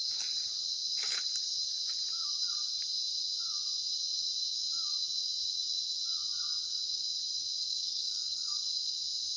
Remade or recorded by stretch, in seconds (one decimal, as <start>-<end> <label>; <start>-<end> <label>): 0.0-7.6 recorded; 7.6-8.9 remade; 8.9-9.4 recorded